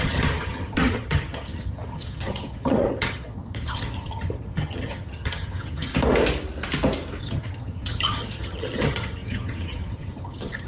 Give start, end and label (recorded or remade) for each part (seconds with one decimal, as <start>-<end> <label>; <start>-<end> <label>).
0.0-5.9 remade; 5.9-7.2 recorded; 7.2-10.7 remade